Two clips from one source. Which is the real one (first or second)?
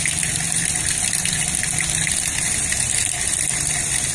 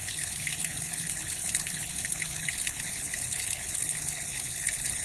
first